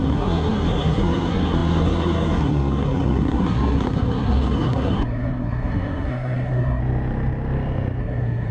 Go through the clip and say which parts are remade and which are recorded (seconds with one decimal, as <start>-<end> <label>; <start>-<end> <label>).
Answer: 0.0-6.8 remade; 6.8-8.0 recorded; 8.0-8.5 remade